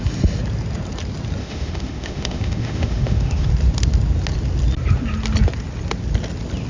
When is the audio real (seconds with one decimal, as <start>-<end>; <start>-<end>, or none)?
0.0-1.4; 3.5-6.7

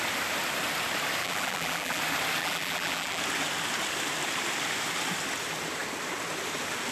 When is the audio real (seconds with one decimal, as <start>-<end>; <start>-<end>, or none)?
0.0-1.2; 2.0-2.4; 3.2-6.9

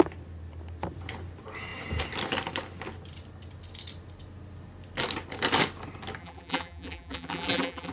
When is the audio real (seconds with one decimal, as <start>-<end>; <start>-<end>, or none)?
0.0-6.2